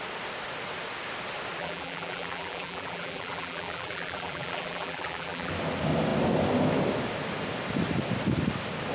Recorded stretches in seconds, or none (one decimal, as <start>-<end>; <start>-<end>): 0.0-1.6; 5.5-8.9